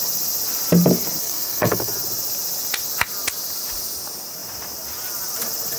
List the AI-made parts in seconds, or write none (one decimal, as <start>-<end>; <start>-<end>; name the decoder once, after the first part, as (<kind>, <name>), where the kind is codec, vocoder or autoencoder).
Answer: 1.2-1.9 (codec, SNAC)